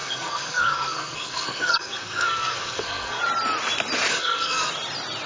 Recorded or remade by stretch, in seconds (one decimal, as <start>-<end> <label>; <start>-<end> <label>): 0.0-3.2 remade; 3.2-4.1 recorded; 4.1-4.7 remade; 4.7-5.3 recorded